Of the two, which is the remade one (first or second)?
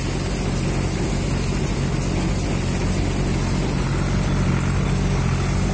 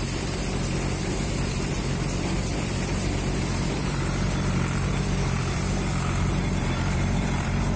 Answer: second